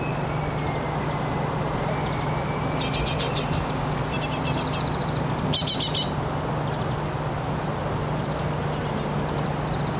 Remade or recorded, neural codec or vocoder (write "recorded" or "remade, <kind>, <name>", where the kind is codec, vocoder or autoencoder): recorded